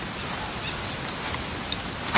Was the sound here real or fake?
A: real